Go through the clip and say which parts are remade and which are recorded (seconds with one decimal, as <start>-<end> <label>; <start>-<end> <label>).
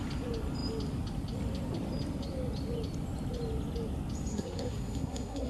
0.0-4.3 recorded; 4.3-5.5 remade